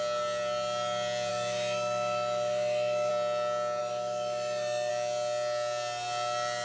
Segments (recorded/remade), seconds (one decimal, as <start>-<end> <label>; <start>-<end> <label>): 0.0-1.3 recorded; 1.3-3.1 remade; 3.1-3.8 recorded; 3.8-4.9 remade; 4.9-6.6 recorded